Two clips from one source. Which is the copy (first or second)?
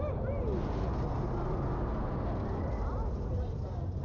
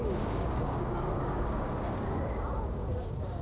second